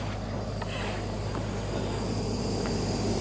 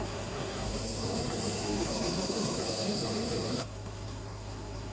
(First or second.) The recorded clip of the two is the first